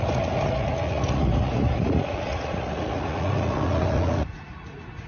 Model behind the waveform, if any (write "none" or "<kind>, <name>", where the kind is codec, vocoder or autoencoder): vocoder, Vocos